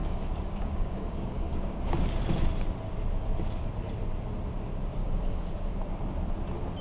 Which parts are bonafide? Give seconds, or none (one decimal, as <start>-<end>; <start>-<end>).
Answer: 2.2-5.0; 5.8-6.8